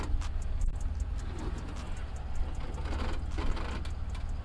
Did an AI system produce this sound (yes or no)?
no